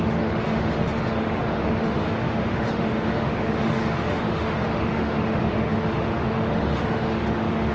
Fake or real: fake